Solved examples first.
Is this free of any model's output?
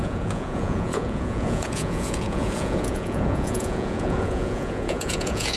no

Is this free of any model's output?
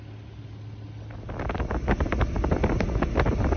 yes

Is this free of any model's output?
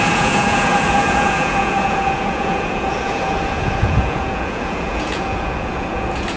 no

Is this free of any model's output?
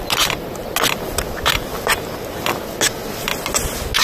yes